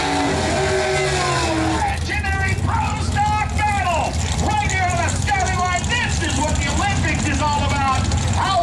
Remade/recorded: recorded